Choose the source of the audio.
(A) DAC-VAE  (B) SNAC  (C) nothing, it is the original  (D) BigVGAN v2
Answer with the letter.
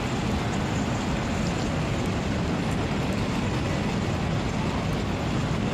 C